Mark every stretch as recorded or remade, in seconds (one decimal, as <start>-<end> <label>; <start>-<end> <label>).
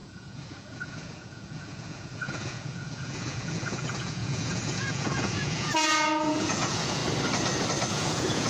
0.0-7.0 remade; 7.0-7.9 recorded; 7.9-8.5 remade